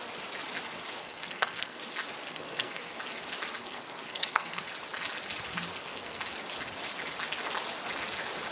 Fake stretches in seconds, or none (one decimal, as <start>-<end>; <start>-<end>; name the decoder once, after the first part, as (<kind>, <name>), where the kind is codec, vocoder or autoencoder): 1.0-1.8 (codec, SNAC); 2.3-3.0; 3.6-4.6; 5.7-6.2